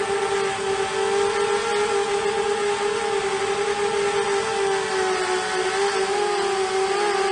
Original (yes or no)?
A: yes